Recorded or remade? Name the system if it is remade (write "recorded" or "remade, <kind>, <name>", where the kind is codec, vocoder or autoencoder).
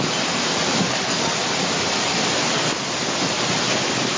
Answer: recorded